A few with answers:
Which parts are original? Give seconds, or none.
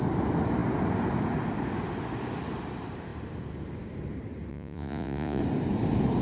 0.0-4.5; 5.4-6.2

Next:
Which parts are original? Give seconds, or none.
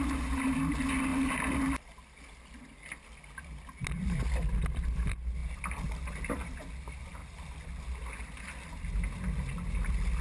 0.0-10.2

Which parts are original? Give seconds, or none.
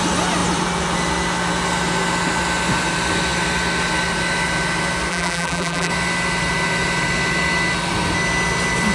0.0-5.1; 5.9-8.9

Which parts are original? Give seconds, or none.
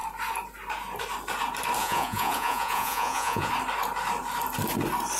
0.0-1.8; 3.5-5.2